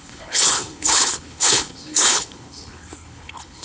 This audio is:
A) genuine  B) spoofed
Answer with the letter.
B